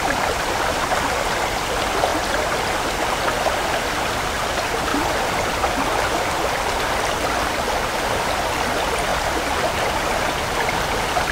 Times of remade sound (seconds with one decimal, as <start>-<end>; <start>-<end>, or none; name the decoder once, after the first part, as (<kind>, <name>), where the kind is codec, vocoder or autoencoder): 9.1-9.9 (vocoder, BigVGAN v2)